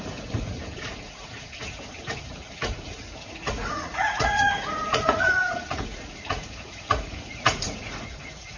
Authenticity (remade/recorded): remade